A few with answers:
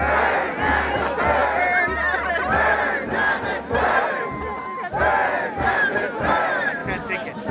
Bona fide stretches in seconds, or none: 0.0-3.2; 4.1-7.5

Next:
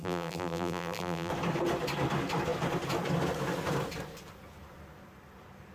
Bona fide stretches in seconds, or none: 1.3-5.7

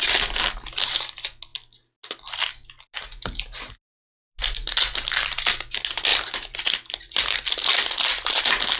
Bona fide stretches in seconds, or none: 0.0-6.1; 8.4-8.8